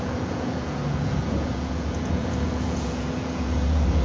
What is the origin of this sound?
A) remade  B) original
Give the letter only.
A